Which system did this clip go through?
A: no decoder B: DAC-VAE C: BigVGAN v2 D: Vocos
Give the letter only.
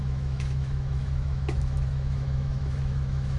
B